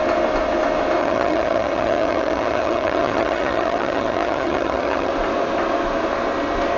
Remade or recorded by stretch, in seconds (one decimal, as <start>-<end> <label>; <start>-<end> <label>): 0.0-1.0 recorded; 1.0-5.1 remade; 5.1-6.8 recorded